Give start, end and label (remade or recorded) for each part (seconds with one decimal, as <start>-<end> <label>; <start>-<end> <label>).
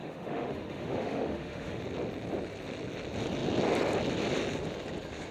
0.0-1.8 remade; 1.8-5.3 recorded